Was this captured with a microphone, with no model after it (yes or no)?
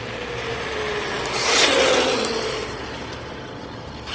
yes